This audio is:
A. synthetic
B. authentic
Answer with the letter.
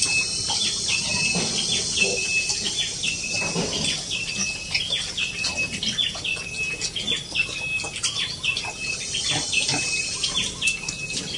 B